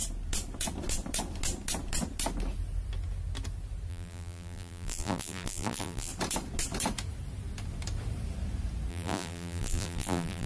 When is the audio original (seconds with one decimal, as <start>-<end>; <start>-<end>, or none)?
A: 0.0-3.9; 6.1-8.9